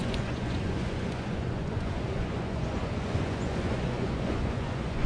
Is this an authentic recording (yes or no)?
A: no